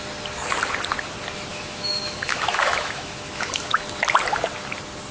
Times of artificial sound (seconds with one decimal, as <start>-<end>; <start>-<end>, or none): 1.5-3.8